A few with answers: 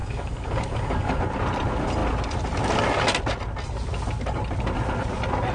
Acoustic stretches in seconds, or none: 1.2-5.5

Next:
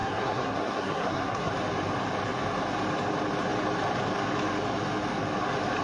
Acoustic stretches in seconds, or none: 1.5-5.8

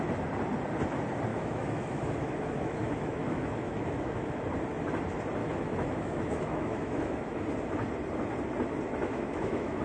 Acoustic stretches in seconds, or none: 0.0-1.3; 4.4-5.4; 7.4-9.0

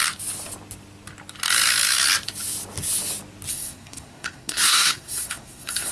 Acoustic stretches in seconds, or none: 0.0-3.5